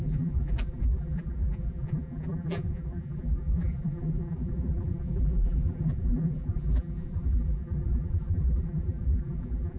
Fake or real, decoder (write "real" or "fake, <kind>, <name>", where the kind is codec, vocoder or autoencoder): fake, vocoder, BigVGAN v2